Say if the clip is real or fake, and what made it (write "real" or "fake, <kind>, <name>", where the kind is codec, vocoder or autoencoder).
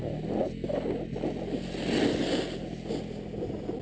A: real